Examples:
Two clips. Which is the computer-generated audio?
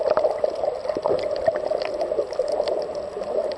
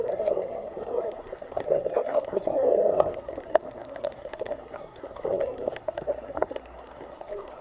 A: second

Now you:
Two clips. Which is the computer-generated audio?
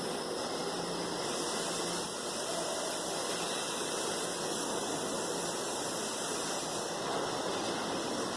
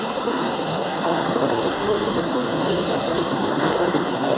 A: second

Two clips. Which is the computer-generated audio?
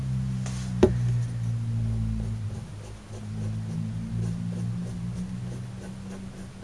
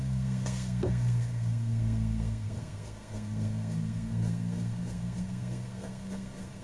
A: second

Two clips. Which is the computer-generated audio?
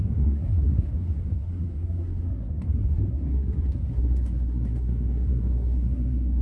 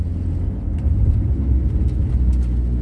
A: first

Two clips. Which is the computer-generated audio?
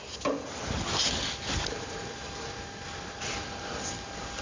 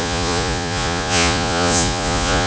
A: second